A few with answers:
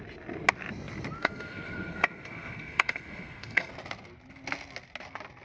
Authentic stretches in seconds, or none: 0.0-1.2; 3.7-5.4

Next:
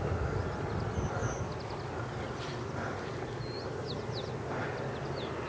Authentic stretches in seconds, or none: 0.0-5.5

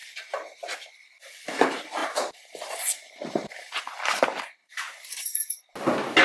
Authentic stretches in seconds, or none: 0.0-2.0; 3.8-4.6; 5.6-6.2

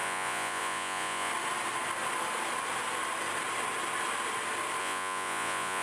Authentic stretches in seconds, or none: 1.3-4.8

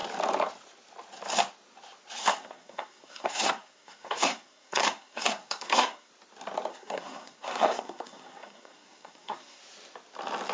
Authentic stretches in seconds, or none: 0.0-2.2; 6.1-6.7; 9.6-10.5

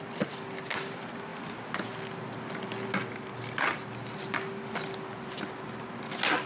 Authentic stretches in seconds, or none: 0.0-6.5

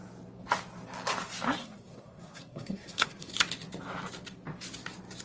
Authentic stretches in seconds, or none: 0.0-1.6; 3.3-5.2